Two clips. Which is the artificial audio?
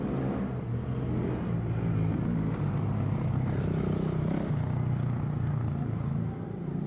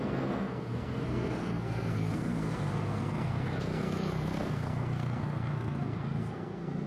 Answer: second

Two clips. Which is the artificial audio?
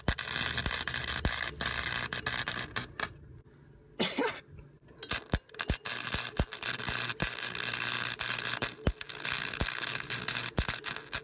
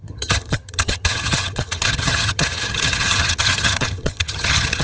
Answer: second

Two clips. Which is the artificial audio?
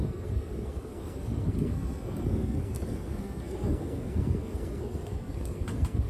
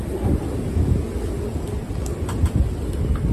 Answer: first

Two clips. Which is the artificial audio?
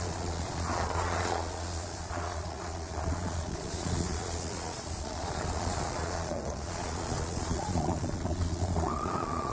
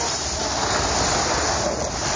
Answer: first